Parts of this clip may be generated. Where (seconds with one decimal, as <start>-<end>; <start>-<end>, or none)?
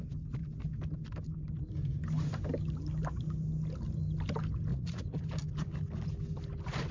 4.7-5.2